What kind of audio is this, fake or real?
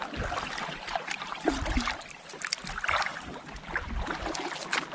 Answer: real